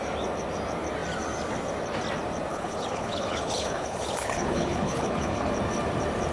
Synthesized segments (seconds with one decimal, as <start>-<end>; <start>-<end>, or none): 2.5-5.5